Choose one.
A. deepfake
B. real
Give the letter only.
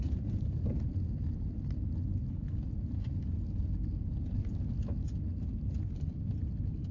B